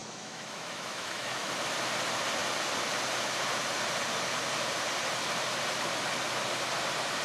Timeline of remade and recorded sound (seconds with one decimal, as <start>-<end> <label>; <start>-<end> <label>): 0.0-1.5 remade; 1.5-7.2 recorded